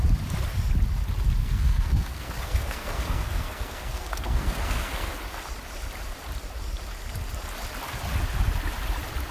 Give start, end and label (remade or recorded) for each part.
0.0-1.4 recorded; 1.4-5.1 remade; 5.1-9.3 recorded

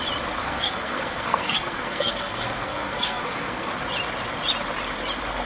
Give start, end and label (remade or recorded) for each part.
0.0-0.4 recorded; 0.4-3.7 remade; 3.7-5.5 recorded

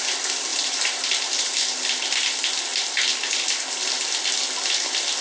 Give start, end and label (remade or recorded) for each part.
0.0-0.5 recorded; 0.5-1.5 remade; 1.5-5.2 recorded

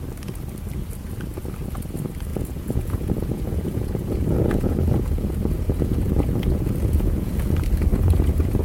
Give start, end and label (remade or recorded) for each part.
0.0-2.3 recorded; 2.3-7.3 remade; 7.3-7.9 recorded; 7.9-8.6 remade

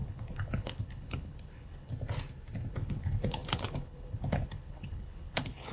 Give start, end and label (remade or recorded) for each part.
0.0-1.9 remade; 1.9-2.7 recorded; 2.7-5.7 remade